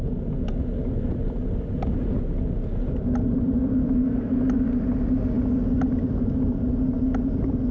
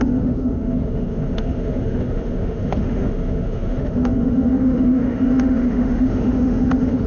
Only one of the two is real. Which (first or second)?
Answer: first